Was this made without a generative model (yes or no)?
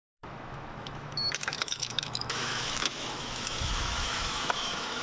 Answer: no